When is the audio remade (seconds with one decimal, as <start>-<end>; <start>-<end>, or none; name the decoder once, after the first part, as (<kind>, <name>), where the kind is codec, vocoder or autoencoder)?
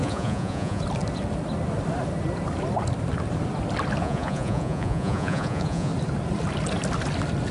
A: 0.0-0.8 (vocoder, Vocos); 4.0-5.9